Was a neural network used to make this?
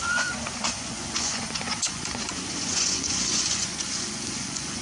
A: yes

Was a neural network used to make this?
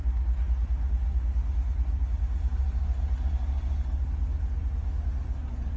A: no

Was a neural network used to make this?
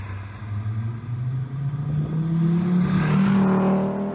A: no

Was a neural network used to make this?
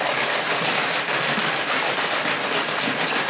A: no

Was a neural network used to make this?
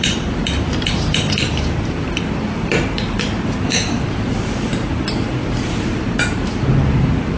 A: yes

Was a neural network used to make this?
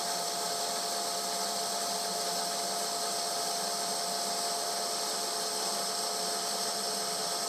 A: no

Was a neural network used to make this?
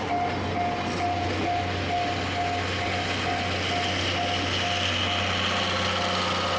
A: no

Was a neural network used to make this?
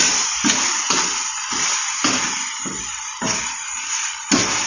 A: no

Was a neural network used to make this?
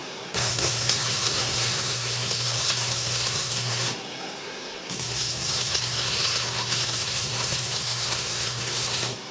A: yes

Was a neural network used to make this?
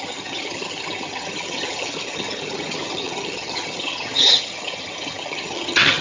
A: yes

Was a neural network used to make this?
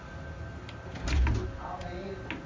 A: no